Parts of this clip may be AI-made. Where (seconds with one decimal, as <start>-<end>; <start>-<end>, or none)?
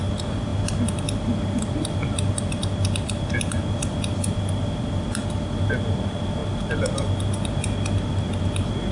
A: none